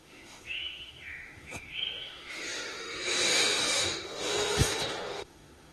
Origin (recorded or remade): remade